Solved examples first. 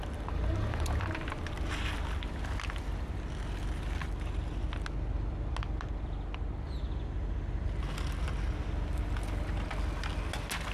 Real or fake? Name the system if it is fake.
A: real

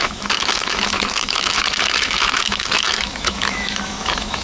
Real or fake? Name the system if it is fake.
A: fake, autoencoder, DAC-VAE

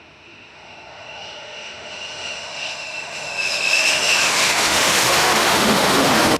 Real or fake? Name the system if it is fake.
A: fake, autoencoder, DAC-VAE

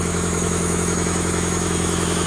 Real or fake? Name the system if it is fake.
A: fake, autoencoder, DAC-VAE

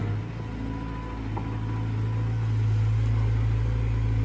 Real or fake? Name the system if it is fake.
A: real